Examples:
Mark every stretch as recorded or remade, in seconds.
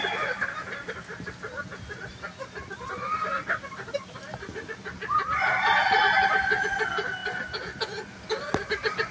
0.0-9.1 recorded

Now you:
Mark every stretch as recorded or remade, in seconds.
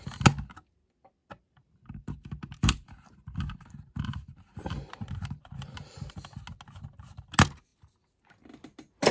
0.0-1.2 recorded; 1.2-6.1 remade; 6.1-9.1 recorded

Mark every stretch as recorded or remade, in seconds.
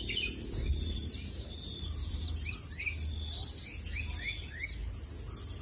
0.0-1.0 recorded; 1.0-2.6 remade; 2.6-4.4 recorded; 4.4-5.1 remade; 5.1-5.6 recorded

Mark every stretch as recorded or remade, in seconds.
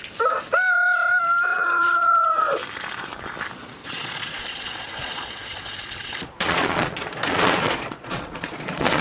0.0-1.5 recorded; 1.5-2.5 remade; 2.5-3.8 recorded; 3.8-9.0 remade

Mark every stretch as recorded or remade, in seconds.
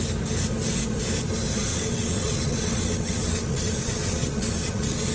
0.0-1.7 recorded; 1.7-5.1 remade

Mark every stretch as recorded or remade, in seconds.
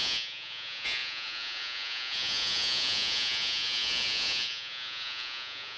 0.0-5.8 remade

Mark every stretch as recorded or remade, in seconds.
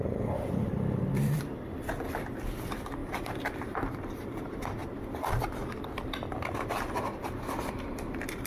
0.0-3.0 remade; 3.0-3.6 recorded; 3.6-8.5 remade